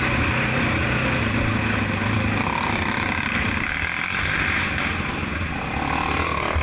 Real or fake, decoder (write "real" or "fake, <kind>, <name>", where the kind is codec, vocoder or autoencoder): real